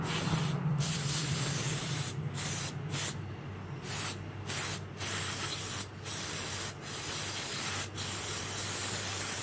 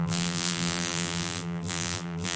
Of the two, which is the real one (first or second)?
first